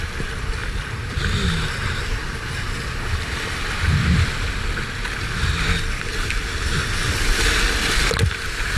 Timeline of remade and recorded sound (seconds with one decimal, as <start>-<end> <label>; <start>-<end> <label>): 0.0-0.6 recorded; 0.6-3.5 remade; 3.5-8.8 recorded